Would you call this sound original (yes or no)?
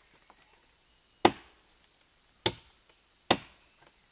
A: yes